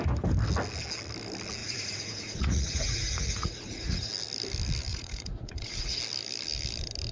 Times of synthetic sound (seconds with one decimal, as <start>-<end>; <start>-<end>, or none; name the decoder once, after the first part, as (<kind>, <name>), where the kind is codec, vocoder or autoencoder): 1.6-4.1 (vocoder, Vocos); 4.9-6.0